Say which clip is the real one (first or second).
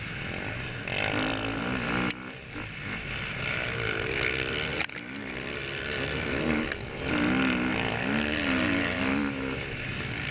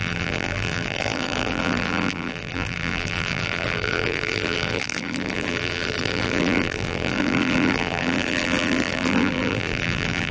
first